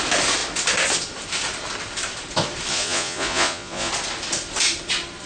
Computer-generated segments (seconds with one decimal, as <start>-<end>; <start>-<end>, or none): 2.7-3.9